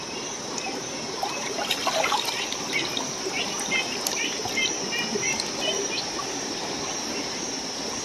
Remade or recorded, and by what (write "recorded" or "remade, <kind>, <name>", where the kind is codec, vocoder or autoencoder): recorded